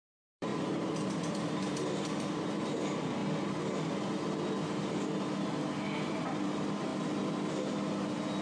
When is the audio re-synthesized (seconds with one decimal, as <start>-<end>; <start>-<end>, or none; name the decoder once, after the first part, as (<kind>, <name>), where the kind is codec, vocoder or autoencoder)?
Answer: 0.0-3.2 (vocoder, BigVGAN v2); 6.1-6.9